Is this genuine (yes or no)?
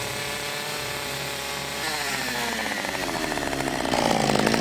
yes